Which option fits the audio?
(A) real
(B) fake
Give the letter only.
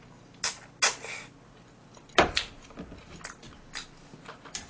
A